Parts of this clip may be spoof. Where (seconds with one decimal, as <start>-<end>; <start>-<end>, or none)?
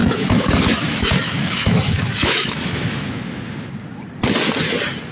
0.0-3.1